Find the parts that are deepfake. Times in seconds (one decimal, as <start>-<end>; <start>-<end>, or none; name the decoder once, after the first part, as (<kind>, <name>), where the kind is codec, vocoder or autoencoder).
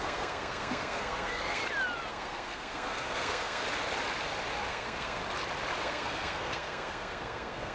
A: 0.0-1.6 (codec, SNAC); 2.1-3.6; 4.7-5.2; 5.8-7.7